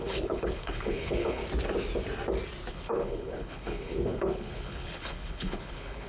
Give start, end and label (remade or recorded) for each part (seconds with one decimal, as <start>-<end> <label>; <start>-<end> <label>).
0.0-1.4 remade; 1.4-2.7 recorded; 2.7-6.1 remade